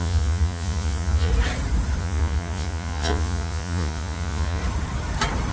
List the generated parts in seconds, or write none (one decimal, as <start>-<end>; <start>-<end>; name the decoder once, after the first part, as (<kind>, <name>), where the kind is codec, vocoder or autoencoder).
0.0-1.3 (vocoder, Vocos); 2.0-4.6